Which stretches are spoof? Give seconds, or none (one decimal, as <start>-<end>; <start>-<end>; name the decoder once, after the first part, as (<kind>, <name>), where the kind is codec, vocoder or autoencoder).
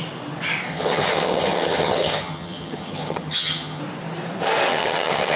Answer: 0.7-3.8 (vocoder, HiFi-GAN); 4.7-5.4